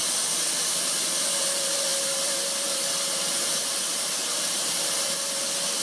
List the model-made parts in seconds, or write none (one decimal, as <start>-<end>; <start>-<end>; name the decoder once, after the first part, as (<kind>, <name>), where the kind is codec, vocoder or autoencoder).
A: 0.0-5.8 (vocoder, BigVGAN v2)